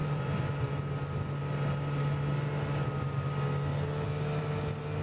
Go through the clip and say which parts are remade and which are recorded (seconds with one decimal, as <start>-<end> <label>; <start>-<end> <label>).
0.0-0.7 remade; 0.7-5.0 recorded